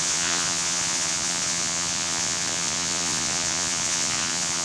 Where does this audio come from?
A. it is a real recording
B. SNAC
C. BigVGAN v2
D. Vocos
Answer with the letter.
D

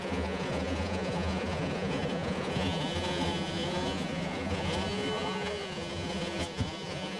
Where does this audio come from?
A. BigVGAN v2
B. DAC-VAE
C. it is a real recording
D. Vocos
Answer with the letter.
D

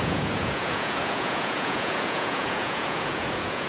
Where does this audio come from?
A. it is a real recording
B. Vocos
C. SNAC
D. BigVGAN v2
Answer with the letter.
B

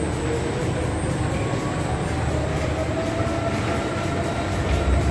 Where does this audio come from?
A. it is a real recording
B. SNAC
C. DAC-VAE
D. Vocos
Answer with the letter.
A